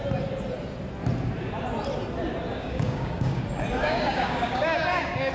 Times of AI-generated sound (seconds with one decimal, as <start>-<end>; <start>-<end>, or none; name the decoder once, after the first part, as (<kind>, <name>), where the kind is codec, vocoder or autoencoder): 2.5-3.4 (codec, DAC); 3.8-5.3